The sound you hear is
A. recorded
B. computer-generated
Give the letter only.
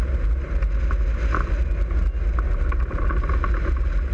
A